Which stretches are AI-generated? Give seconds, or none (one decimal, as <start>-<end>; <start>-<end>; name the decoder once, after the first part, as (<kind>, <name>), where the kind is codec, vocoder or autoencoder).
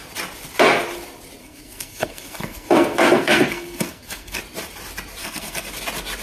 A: 1.4-4.4 (codec, SNAC); 5.2-5.7